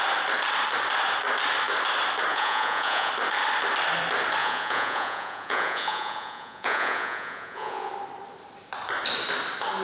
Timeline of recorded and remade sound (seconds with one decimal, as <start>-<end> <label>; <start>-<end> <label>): 0.0-2.3 recorded; 2.3-3.1 remade; 3.1-4.4 recorded; 4.4-7.9 remade; 7.9-9.8 recorded